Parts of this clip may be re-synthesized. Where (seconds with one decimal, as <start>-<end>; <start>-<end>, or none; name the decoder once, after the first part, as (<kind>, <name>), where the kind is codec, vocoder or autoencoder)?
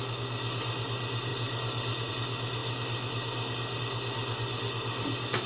none